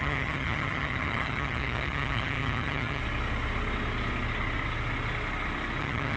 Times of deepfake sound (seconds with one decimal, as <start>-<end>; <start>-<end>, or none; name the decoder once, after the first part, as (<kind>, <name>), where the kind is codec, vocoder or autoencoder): 0.0-3.0 (vocoder, HiFi-GAN); 5.8-6.2